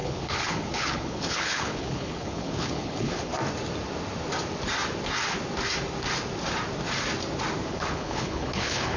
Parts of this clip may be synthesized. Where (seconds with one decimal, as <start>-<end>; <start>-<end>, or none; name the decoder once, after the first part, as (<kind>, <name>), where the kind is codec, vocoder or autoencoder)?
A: 0.0-3.3 (codec, HILCodec); 7.7-9.0